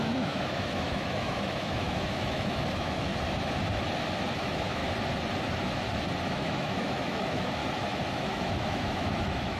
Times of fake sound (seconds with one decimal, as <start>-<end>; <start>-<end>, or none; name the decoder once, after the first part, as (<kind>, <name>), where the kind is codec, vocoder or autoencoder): 0.0-3.1 (autoencoder, DAC-VAE); 4.3-4.8; 6.3-7.6; 8.1-9.6